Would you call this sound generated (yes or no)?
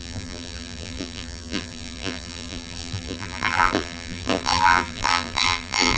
yes